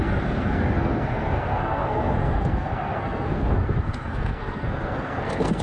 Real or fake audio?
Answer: fake